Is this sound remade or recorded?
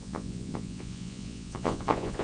remade